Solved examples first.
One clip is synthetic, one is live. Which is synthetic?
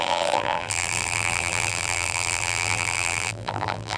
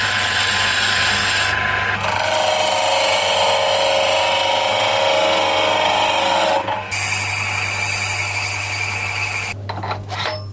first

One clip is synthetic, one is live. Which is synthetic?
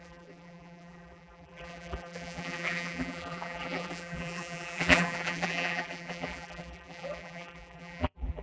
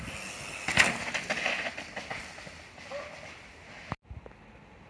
first